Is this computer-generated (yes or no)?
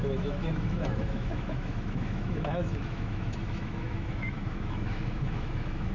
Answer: yes